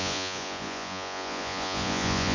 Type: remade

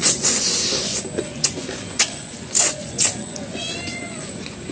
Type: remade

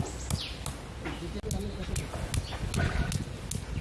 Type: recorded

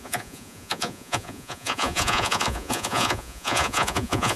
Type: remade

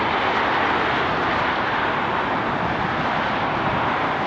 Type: recorded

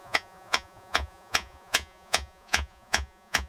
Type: remade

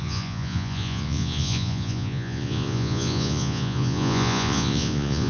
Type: remade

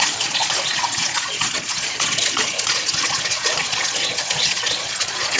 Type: remade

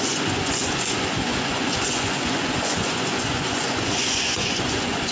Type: remade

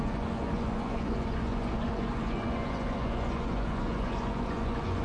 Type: remade